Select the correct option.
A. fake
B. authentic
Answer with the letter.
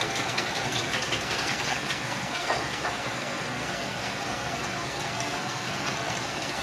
A